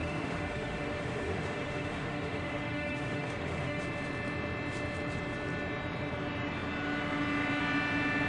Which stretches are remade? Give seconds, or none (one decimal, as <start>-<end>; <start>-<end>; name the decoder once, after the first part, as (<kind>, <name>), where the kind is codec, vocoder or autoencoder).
0.0-3.8 (autoencoder, DAC-VAE)